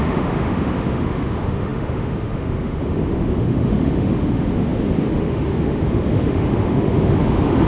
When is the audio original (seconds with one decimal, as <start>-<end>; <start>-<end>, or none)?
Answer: none